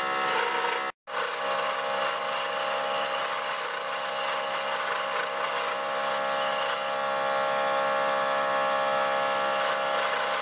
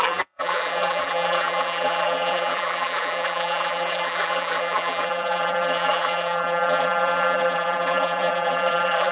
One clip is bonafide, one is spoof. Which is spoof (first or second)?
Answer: second